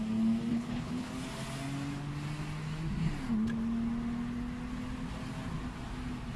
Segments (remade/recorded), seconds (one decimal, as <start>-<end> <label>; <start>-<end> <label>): 0.0-0.5 recorded; 0.5-1.1 remade; 1.1-6.4 recorded